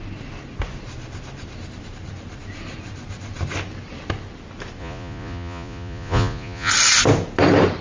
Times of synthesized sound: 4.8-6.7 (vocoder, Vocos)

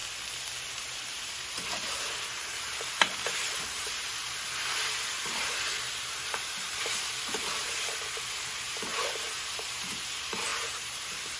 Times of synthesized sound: 0.7-11.4 (vocoder, BigVGAN v2)

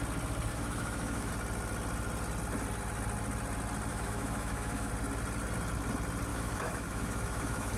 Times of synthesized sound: 0.5-1.3 (autoencoder, DAC-VAE); 3.9-4.9; 6.3-7.8